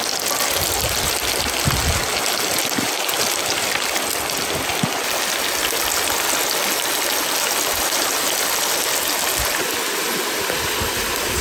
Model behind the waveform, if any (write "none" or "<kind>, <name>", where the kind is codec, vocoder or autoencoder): none